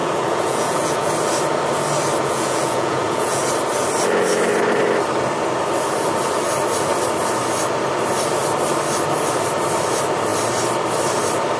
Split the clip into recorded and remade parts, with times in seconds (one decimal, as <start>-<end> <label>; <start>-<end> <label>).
0.0-1.1 remade; 1.1-2.2 recorded; 2.2-3.4 remade; 3.4-11.6 recorded